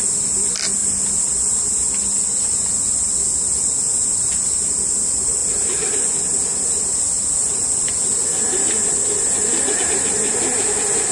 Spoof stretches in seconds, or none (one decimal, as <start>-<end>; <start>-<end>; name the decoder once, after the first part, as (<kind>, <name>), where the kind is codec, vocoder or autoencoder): none

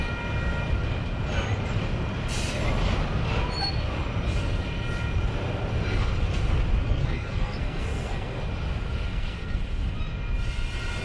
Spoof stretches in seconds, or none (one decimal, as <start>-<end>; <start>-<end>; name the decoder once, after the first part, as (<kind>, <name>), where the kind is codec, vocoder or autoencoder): 6.8-8.4 (codec, SNAC); 9.1-9.6

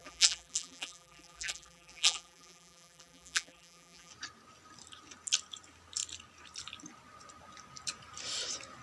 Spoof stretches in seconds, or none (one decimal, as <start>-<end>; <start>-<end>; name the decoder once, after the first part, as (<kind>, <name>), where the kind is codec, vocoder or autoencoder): 0.0-4.1 (vocoder, BigVGAN v2)